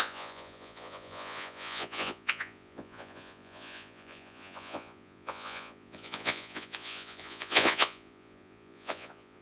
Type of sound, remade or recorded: remade